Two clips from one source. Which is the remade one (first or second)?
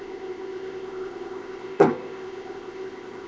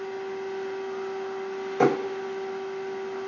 first